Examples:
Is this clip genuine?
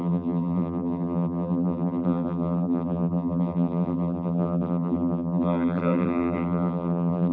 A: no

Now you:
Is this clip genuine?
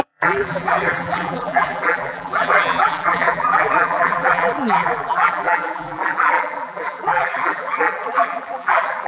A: no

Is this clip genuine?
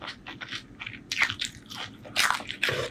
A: yes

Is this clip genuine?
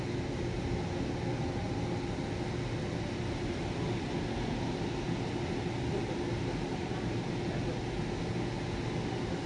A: yes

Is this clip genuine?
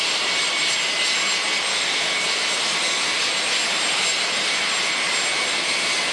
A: yes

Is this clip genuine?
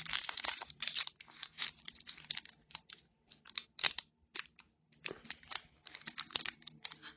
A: no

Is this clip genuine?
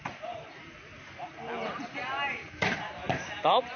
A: yes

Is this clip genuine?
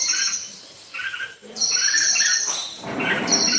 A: no